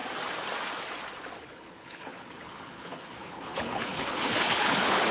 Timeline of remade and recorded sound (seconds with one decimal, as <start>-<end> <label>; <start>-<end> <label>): 0.0-1.4 recorded; 1.4-5.1 remade